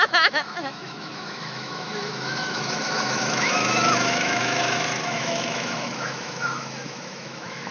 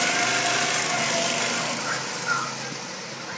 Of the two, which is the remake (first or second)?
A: first